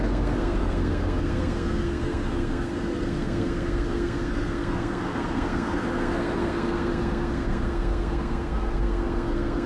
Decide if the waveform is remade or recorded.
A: remade